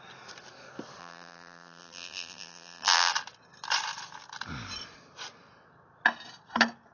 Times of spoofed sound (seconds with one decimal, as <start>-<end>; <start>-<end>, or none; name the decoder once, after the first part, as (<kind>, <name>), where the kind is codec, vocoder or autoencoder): 1.0-3.1 (vocoder, BigVGAN v2)